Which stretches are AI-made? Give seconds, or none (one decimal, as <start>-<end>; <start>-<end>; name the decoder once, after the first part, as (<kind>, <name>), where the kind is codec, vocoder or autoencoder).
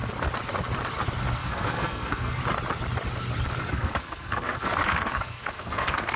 1.4-2.4 (codec, SNAC); 3.6-6.2